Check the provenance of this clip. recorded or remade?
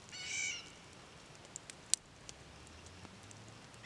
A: recorded